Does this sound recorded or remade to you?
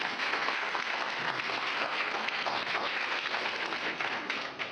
remade